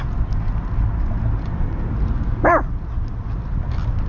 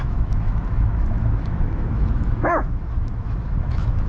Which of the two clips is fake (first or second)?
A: second